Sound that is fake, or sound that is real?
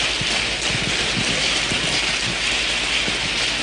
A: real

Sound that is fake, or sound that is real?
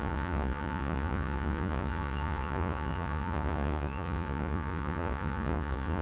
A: fake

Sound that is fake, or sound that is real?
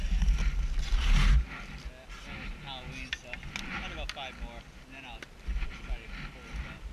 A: real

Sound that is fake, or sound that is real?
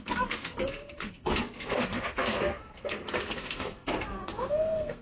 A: fake